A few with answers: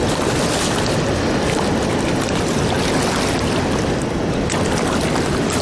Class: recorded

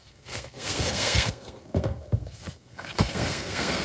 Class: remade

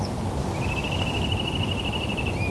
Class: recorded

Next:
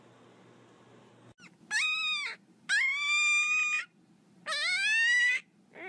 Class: recorded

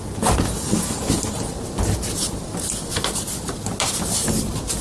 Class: recorded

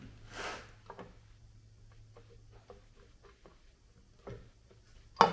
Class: recorded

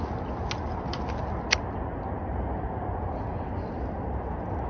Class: recorded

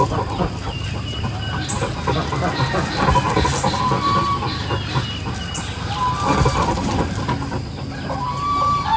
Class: recorded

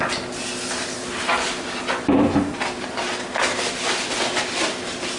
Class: recorded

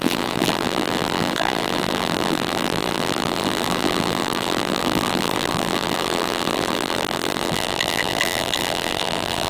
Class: remade